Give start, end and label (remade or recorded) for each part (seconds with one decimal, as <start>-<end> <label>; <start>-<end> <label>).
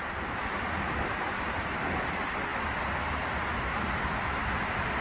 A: 0.0-5.0 recorded